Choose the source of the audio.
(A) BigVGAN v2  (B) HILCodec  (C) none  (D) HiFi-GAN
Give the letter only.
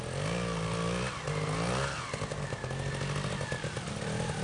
C